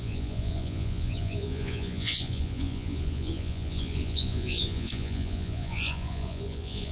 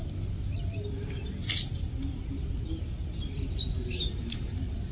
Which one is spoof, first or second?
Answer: first